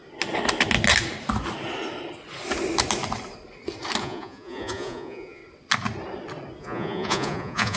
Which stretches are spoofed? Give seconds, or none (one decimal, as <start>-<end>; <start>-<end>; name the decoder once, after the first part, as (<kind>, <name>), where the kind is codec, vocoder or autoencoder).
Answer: 4.0-5.4 (vocoder, Vocos); 6.6-7.8